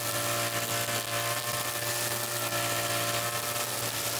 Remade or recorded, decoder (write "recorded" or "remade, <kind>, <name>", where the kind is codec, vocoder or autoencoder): recorded